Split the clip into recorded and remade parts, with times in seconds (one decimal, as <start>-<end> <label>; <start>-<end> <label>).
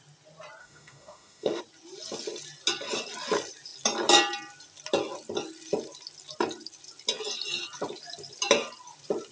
0.0-0.6 recorded; 0.6-1.6 remade; 1.6-9.3 recorded